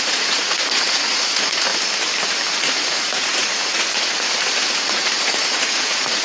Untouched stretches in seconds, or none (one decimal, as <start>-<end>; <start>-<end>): 1.7-2.8